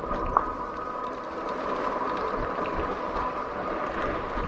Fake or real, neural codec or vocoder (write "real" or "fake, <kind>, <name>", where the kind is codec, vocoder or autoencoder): real